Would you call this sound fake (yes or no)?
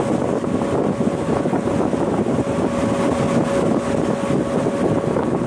no